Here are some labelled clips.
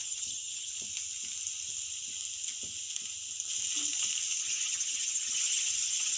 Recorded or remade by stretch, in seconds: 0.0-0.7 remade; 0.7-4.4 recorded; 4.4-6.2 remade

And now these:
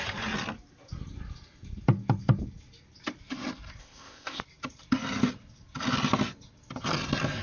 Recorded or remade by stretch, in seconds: 0.0-3.8 recorded; 3.8-4.4 remade; 4.4-7.4 recorded

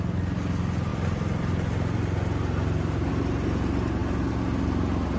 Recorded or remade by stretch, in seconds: 0.0-5.2 recorded